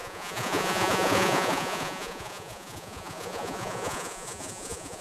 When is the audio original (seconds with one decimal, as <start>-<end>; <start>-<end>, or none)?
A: none